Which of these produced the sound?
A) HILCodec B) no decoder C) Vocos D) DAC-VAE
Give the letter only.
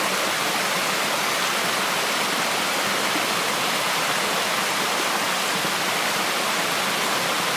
B